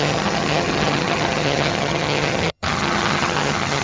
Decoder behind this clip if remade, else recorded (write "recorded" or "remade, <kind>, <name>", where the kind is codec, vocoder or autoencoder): remade, vocoder, HiFi-GAN